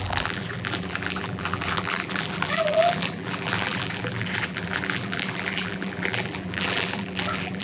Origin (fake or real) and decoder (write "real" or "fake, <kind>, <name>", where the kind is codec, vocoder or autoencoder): fake, vocoder, BigVGAN v2